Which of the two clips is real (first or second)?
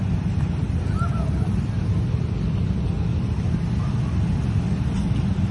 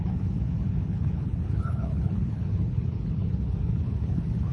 first